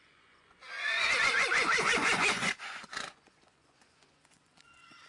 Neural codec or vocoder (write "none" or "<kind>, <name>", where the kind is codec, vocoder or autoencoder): vocoder, Vocos